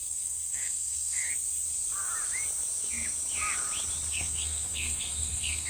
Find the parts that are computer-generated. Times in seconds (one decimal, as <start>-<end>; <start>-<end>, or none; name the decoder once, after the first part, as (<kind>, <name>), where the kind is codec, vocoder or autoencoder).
0.0-1.3 (codec, SNAC); 4.1-5.7